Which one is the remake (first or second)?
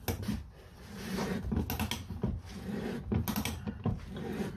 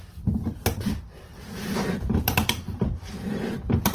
second